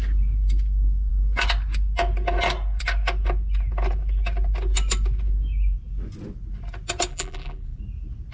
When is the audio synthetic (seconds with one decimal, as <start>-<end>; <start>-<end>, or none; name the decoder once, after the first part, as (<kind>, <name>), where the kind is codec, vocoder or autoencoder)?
7.1-7.8 (vocoder, BigVGAN v2)